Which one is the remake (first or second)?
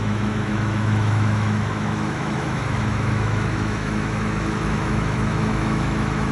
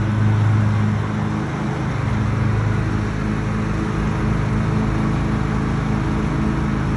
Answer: first